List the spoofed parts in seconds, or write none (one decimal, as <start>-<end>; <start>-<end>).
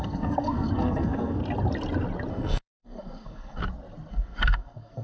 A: 0.0-1.4; 2.3-3.6; 4.1-5.0